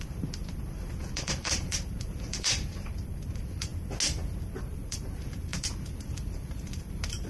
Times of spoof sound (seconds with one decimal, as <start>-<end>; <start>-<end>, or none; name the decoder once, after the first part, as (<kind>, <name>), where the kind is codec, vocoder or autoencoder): 0.0-3.7 (vocoder, BigVGAN v2); 4.6-7.3